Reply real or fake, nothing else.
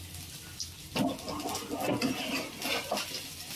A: real